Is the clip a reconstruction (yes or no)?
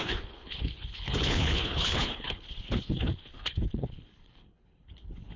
yes